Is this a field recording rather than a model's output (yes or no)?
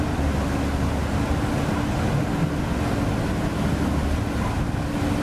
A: yes